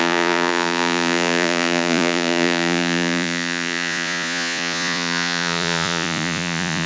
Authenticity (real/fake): fake